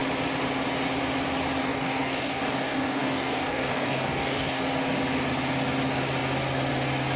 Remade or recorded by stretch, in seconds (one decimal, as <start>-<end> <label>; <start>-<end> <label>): 0.0-1.6 recorded; 1.6-4.6 remade; 4.6-7.2 recorded